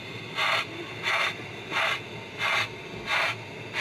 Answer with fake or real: real